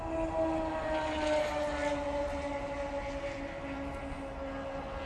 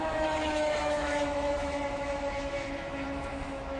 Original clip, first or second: first